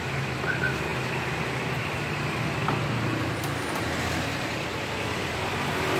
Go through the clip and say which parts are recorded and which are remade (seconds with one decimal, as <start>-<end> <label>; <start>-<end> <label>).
0.0-2.6 recorded; 2.6-3.8 remade; 3.8-6.0 recorded